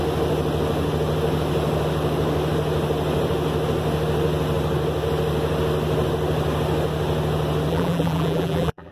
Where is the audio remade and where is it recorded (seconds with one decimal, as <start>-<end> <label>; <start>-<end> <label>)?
0.0-7.7 recorded; 7.7-8.9 remade